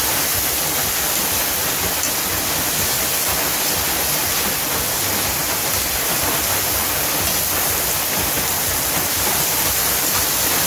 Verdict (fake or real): real